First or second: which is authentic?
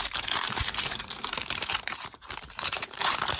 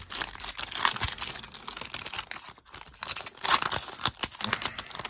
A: second